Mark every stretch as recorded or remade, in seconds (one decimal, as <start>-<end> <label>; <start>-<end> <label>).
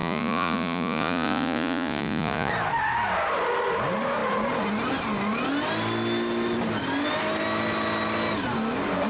0.0-2.5 remade; 2.5-9.1 recorded